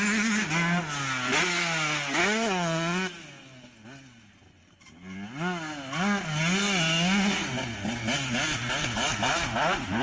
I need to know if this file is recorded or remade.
recorded